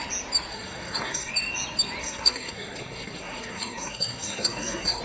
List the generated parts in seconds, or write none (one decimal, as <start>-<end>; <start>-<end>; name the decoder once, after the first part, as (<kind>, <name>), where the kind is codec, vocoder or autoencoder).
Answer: 0.5-1.3 (codec, SNAC); 2.0-5.0